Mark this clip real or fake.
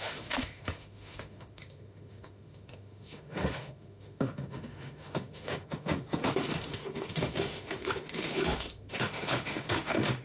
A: fake